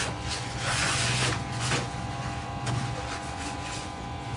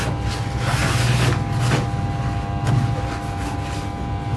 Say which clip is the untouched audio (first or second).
second